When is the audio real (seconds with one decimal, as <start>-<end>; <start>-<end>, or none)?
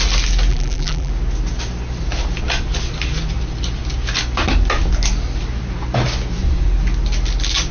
0.0-0.5; 1.1-7.7